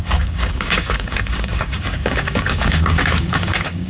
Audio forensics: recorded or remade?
remade